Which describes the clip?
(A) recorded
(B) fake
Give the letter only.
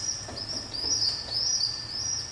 A